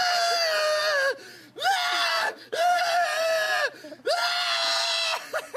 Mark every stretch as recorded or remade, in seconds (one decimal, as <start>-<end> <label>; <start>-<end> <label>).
0.0-2.1 recorded; 2.1-2.8 remade; 2.8-5.6 recorded